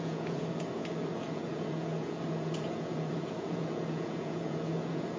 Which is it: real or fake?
fake